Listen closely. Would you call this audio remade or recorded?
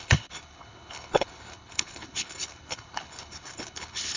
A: remade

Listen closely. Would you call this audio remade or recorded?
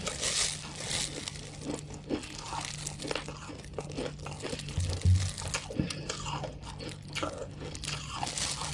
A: recorded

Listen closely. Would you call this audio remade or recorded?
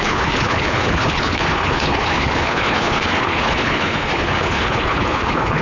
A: remade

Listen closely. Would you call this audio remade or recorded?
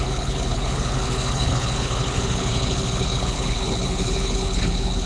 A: remade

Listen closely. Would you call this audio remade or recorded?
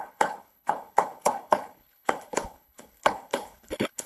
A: remade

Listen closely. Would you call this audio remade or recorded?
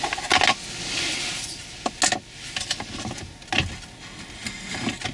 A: recorded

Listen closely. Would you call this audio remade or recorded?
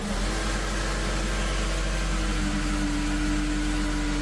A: recorded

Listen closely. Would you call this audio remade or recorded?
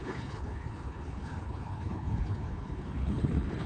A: remade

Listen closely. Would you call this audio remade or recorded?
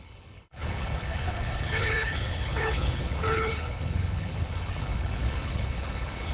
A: remade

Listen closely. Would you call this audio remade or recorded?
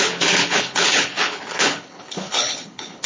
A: remade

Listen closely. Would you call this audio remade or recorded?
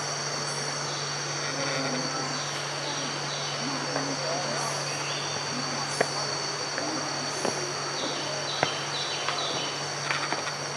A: recorded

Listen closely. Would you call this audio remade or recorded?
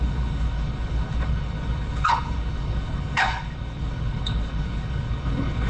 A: remade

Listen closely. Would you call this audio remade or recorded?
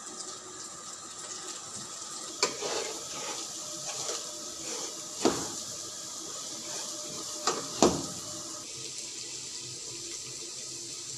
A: recorded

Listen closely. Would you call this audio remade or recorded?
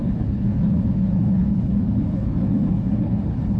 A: remade